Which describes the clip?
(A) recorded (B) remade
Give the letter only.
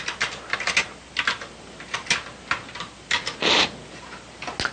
A